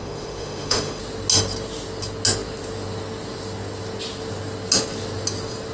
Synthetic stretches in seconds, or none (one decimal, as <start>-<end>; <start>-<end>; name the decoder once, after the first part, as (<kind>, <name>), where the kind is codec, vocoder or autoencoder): 0.0-1.0 (autoencoder, DAC-VAE)